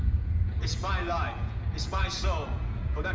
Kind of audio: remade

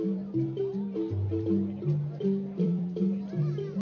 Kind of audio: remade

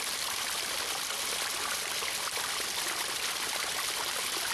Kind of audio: recorded